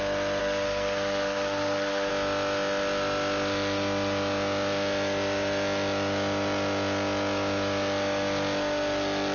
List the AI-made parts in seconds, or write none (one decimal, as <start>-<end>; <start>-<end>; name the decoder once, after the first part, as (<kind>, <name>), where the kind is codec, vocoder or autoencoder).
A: 0.4-2.1 (codec, SNAC)